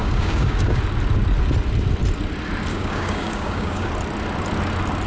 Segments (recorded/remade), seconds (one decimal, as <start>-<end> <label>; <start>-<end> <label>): 0.0-0.8 remade; 0.8-2.7 recorded; 2.7-3.9 remade; 3.9-5.1 recorded